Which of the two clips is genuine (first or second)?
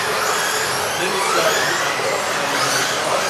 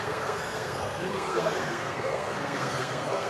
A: first